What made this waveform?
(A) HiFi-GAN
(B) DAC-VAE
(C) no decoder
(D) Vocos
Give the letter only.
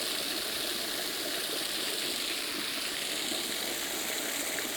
C